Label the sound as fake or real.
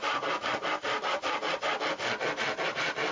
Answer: real